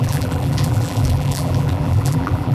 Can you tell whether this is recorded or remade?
remade